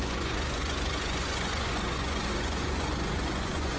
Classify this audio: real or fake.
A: fake